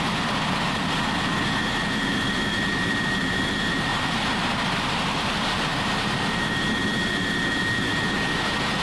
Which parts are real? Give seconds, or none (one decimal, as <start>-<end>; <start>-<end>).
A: none